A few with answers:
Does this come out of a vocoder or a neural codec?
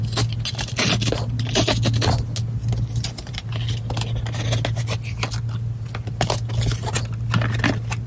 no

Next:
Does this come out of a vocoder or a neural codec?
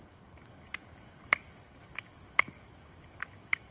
yes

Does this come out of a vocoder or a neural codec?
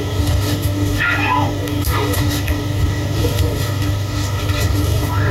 yes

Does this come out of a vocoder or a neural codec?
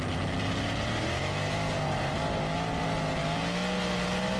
no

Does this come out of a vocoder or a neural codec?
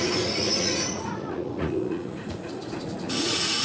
yes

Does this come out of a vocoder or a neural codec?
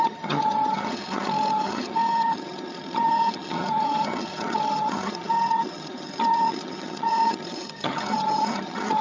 yes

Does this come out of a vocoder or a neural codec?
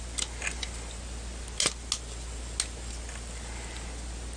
no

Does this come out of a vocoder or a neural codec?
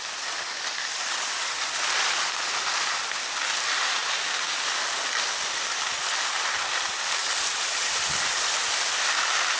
no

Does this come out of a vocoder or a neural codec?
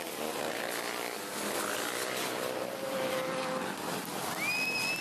no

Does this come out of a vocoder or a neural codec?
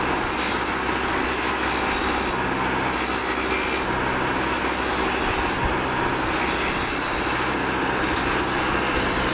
no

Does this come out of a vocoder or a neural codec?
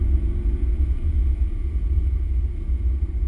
yes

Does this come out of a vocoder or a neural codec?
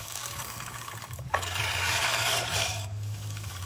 yes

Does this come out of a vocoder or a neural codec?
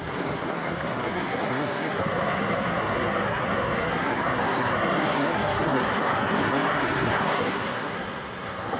yes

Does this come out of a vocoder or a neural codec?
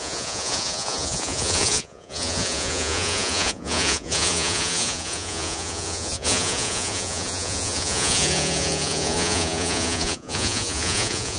yes